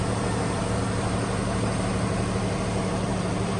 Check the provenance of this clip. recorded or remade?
remade